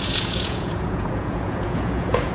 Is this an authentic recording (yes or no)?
no